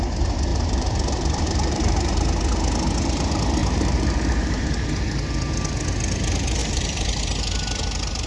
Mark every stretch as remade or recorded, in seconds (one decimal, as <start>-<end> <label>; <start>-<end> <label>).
0.0-0.5 recorded; 0.5-2.1 remade; 2.1-3.6 recorded; 3.6-4.6 remade; 4.6-6.6 recorded; 6.6-7.2 remade; 7.2-8.3 recorded